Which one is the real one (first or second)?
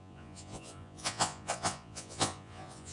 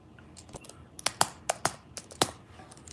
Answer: second